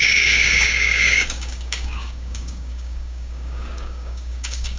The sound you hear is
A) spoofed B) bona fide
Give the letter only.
A